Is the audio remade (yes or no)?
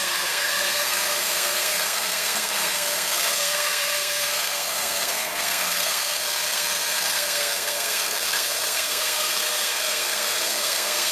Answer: yes